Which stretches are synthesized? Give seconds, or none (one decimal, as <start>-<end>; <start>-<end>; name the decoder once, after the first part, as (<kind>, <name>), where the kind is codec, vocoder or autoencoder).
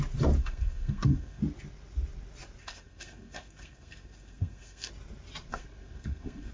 0.4-1.4 (codec, SNAC); 2.6-4.9; 5.5-6.5